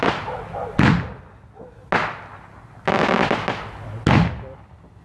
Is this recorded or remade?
recorded